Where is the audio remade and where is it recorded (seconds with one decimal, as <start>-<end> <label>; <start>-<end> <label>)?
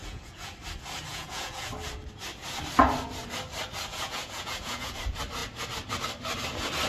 0.0-0.5 remade; 0.5-1.1 recorded; 1.1-1.7 remade; 1.7-3.9 recorded; 3.9-4.9 remade; 4.9-6.9 recorded